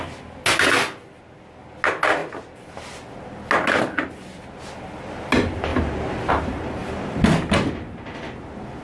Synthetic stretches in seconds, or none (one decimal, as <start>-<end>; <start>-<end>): none